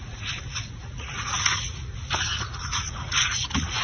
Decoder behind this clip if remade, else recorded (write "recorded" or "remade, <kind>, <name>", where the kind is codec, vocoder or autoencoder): remade, vocoder, Vocos